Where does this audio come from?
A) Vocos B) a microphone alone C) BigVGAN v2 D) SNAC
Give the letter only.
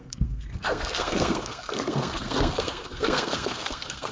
D